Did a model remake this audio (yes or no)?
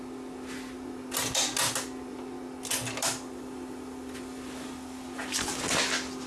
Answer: no